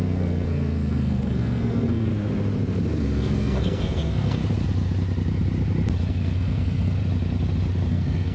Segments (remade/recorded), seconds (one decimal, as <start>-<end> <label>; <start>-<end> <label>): 0.0-2.1 remade; 2.1-3.0 recorded; 3.0-4.4 remade; 4.4-6.1 recorded; 6.1-7.0 remade; 7.0-7.9 recorded; 7.9-8.3 remade

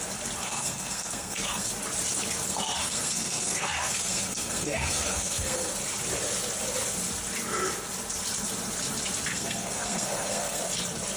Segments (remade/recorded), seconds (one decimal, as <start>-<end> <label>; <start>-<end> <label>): 0.0-0.4 recorded; 0.4-1.7 remade; 1.7-2.5 recorded; 2.5-5.7 remade; 5.7-9.3 recorded; 9.3-10.6 remade; 10.6-11.2 recorded

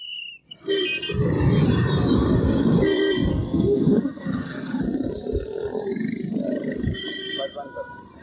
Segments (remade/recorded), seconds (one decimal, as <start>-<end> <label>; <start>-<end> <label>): 0.0-3.3 recorded; 3.3-4.8 remade; 4.8-8.2 recorded

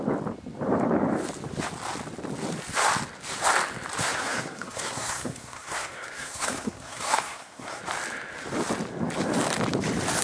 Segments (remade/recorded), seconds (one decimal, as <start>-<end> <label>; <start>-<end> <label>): 0.0-4.0 recorded; 4.0-7.8 remade; 7.8-10.2 recorded

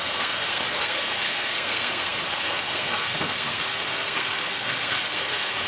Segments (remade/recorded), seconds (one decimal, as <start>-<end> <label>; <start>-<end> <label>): 0.0-5.7 remade